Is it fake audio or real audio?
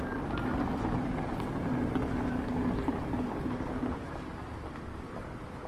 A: real